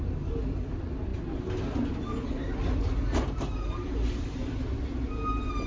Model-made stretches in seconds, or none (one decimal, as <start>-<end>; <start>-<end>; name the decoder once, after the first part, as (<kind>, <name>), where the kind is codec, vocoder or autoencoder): none